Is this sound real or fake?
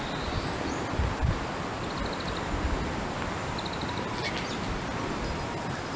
real